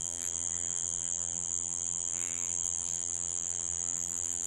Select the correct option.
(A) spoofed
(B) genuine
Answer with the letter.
A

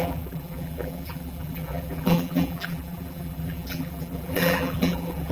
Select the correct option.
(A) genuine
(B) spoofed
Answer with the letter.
B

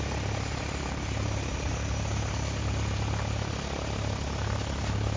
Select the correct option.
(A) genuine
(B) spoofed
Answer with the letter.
A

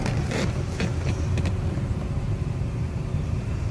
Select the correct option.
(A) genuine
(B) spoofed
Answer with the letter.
B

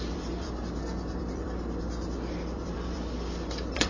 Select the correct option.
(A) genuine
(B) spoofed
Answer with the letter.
B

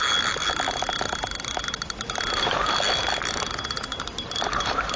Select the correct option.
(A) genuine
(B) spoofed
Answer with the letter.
A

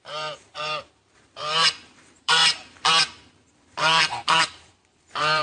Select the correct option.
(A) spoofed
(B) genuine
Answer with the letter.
A